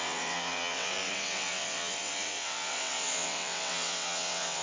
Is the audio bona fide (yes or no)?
no